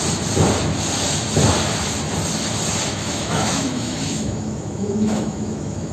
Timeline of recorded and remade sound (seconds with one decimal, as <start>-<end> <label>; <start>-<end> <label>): 0.0-2.9 recorded; 2.9-5.9 remade

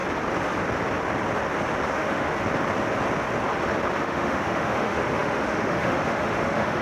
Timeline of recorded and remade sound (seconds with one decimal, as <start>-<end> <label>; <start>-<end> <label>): 0.0-1.9 recorded; 1.9-2.3 remade; 2.3-4.0 recorded; 4.0-6.8 remade

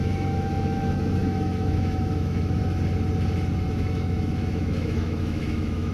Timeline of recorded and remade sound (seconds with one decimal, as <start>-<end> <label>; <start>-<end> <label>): 0.0-2.6 remade; 2.6-3.7 recorded; 3.7-5.9 remade

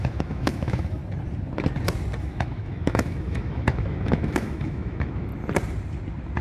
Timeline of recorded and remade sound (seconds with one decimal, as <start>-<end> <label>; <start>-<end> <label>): 0.0-1.0 remade; 1.0-2.2 recorded; 2.2-5.3 remade; 5.3-6.4 recorded